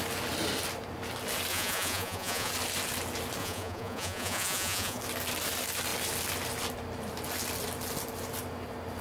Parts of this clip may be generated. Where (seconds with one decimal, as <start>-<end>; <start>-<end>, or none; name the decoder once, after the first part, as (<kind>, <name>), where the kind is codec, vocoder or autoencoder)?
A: 1.5-2.5 (vocoder, Vocos); 3.4-5.0